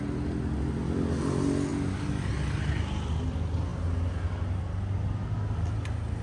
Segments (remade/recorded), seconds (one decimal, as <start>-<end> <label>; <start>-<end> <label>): 0.0-6.2 recorded